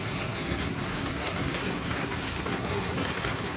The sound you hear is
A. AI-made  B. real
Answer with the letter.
A